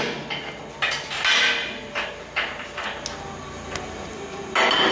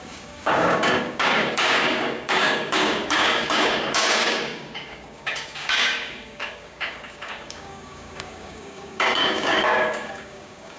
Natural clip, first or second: first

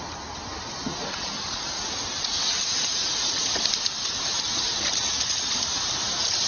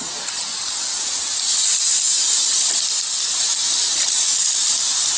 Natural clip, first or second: second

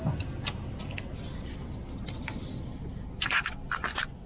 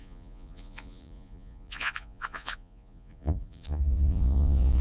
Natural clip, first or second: first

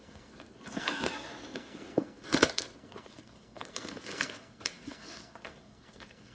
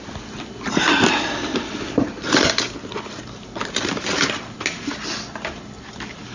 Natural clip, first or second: second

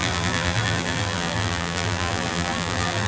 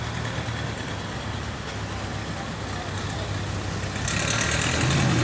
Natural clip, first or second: second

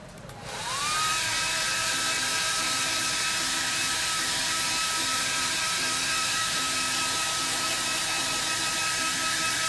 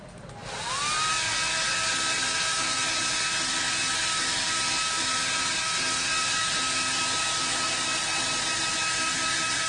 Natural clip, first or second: second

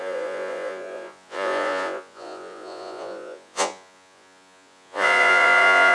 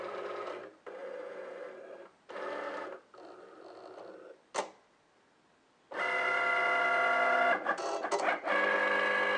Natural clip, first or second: second